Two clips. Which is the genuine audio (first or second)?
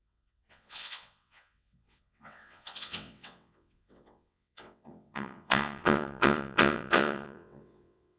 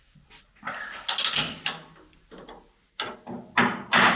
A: second